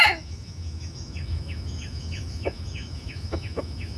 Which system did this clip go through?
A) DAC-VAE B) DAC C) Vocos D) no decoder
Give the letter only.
A